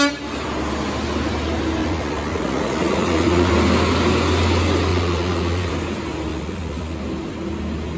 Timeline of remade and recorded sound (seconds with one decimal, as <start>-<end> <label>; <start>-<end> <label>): 0.0-1.8 recorded; 1.8-3.5 remade; 3.5-4.9 recorded; 4.9-5.7 remade; 5.7-6.3 recorded; 6.3-7.0 remade; 7.0-8.0 recorded